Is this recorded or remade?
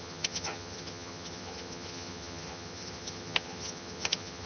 remade